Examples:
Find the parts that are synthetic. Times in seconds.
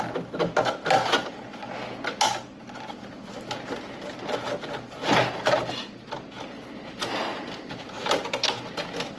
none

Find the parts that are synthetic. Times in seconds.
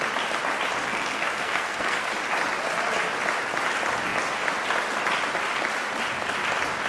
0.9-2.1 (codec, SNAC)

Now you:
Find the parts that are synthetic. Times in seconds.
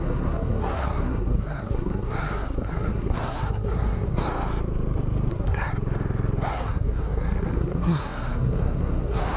0.0-4.2 (codec, SNAC); 5.3-5.7; 6.5-9.4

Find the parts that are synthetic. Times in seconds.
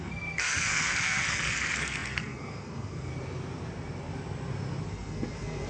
0.0-3.1 (codec, SNAC); 4.9-5.7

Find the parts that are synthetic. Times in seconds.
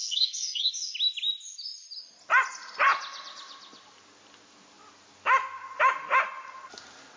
0.0-0.7 (codec, SNAC)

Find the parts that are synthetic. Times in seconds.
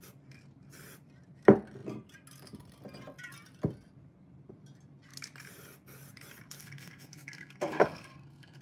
6.6-8.6 (codec, SNAC)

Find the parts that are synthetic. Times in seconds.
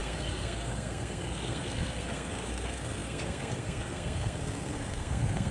0.0-5.5 (codec, SNAC)